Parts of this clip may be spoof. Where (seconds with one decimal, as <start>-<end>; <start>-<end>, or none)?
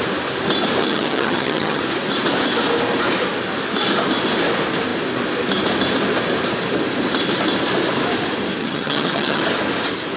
0.8-1.8; 8.6-9.4